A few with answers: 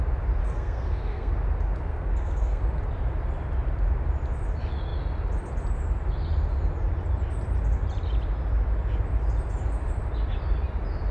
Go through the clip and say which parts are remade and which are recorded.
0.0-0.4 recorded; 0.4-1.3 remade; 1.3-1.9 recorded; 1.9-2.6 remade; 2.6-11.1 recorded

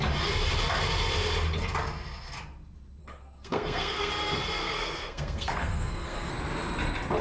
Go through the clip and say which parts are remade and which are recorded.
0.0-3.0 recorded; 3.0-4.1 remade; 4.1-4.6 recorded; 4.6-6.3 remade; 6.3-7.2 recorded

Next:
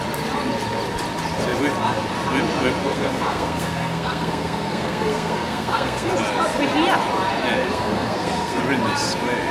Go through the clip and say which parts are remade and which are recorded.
0.0-2.8 recorded; 2.8-6.1 remade; 6.1-7.6 recorded; 7.6-8.6 remade; 8.6-9.5 recorded

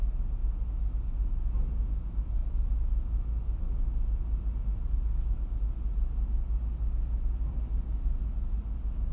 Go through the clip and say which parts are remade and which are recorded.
0.0-9.1 recorded

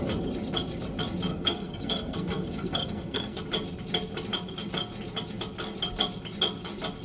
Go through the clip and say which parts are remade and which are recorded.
0.0-1.3 recorded; 1.3-3.4 remade; 3.4-7.0 recorded

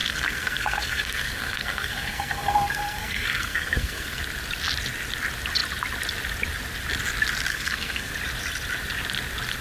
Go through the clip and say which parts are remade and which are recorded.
0.0-4.2 remade; 4.2-7.5 recorded; 7.5-8.1 remade; 8.1-9.6 recorded